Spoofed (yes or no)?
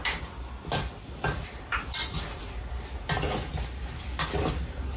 no